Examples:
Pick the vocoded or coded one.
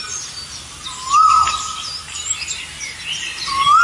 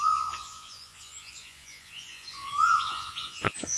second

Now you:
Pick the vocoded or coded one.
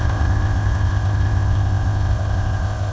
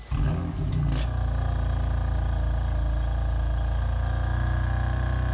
first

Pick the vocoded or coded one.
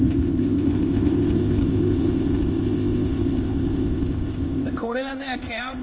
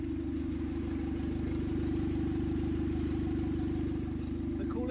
first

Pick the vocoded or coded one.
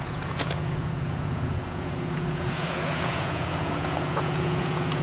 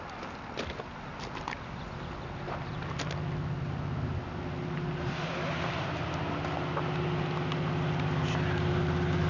first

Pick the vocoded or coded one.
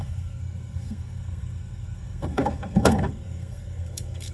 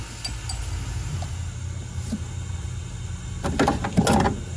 first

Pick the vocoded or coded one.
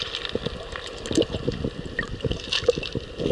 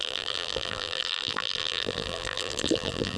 second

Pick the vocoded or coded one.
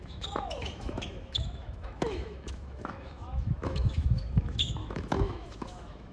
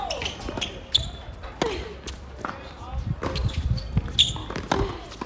first